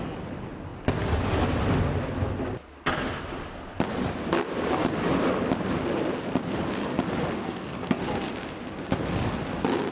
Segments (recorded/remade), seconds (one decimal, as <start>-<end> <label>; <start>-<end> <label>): 0.0-7.4 recorded; 7.4-8.0 remade; 8.0-9.9 recorded